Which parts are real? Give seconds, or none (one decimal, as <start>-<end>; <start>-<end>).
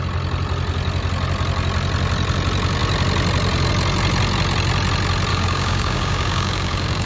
0.0-5.3